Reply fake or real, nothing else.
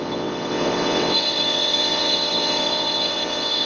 fake